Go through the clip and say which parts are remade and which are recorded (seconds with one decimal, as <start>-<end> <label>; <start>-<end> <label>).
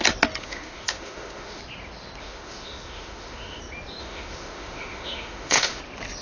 0.0-0.4 recorded; 0.4-1.6 remade; 1.6-2.2 recorded; 2.2-3.6 remade; 3.6-4.0 recorded; 4.0-5.8 remade; 5.8-6.2 recorded